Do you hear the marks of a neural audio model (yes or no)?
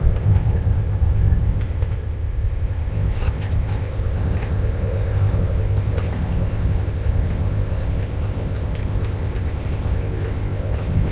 yes